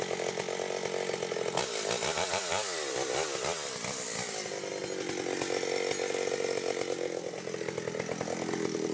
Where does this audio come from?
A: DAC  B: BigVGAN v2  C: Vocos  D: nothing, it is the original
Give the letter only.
D